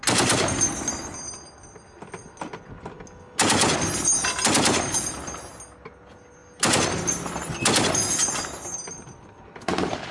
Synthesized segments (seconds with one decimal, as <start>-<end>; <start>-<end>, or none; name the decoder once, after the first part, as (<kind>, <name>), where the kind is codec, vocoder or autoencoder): none